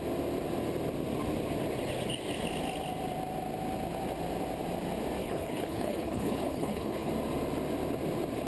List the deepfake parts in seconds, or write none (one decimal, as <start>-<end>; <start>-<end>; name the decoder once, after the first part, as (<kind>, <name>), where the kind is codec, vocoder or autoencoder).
5.2-7.1 (codec, HILCodec)